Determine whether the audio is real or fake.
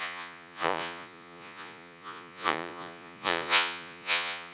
fake